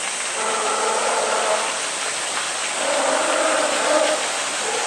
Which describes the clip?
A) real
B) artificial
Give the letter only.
A